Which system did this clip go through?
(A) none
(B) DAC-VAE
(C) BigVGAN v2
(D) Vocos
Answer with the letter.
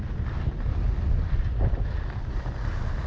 A